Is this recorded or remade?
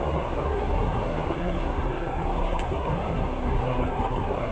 remade